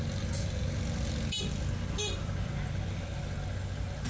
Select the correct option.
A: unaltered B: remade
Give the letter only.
A